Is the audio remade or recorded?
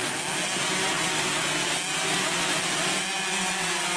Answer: recorded